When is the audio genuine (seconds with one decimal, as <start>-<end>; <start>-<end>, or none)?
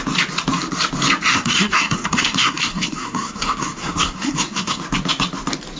0.0-1.3; 4.8-5.8